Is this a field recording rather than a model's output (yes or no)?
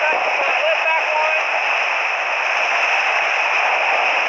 yes